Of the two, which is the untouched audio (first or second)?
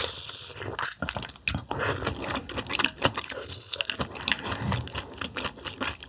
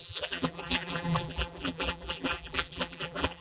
first